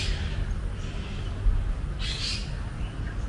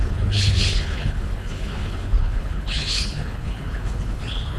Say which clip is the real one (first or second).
first